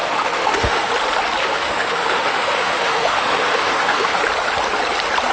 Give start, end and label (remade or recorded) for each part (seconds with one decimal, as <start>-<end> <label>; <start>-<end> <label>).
0.0-0.9 remade; 0.9-1.4 recorded; 1.4-4.2 remade; 4.2-5.3 recorded